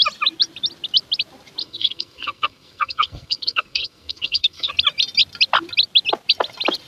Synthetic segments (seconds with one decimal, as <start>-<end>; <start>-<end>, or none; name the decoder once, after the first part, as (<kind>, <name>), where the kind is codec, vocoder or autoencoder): 1.6-4.7 (codec, SNAC)